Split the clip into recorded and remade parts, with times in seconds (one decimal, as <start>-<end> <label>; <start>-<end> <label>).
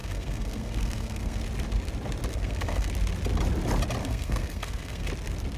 0.0-1.4 remade; 1.4-2.3 recorded; 2.3-2.9 remade; 2.9-4.0 recorded; 4.0-5.1 remade; 5.1-5.6 recorded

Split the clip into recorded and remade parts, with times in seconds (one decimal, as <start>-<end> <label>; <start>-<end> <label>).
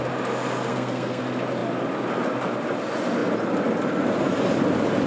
0.0-0.7 recorded; 0.7-1.2 remade; 1.2-5.1 recorded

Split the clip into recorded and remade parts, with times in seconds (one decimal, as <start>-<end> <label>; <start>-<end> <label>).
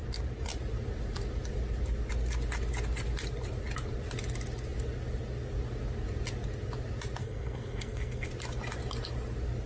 0.0-7.2 recorded; 7.2-8.3 remade; 8.3-9.7 recorded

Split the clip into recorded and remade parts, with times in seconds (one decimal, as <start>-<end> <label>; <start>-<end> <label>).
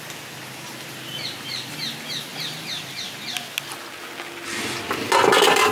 0.0-5.7 recorded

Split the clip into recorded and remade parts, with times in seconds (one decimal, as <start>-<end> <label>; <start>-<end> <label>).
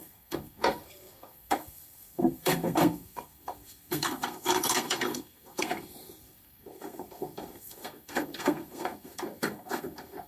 0.0-10.3 remade